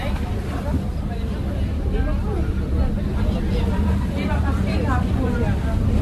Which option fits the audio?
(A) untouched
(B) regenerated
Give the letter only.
A